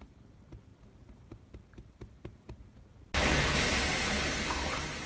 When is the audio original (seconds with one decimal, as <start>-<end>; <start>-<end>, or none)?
0.0-5.1